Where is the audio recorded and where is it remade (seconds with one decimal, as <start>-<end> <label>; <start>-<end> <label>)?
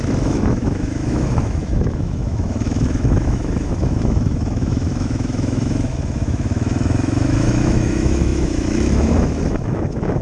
0.0-10.2 remade